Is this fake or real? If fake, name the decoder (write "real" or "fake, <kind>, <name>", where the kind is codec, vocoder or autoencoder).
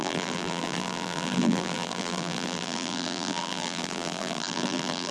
fake, vocoder, BigVGAN v2